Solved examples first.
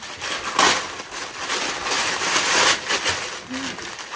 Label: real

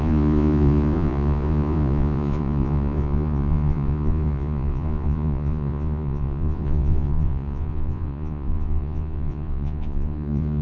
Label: fake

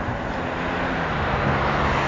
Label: real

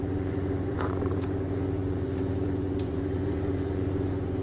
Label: fake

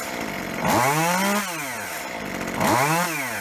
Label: real